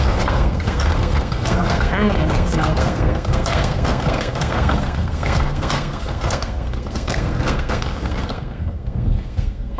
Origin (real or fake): fake